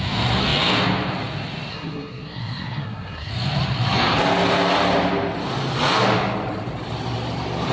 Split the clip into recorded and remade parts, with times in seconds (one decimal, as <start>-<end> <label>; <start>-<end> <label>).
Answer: 0.0-1.7 recorded; 1.7-3.3 remade; 3.3-7.7 recorded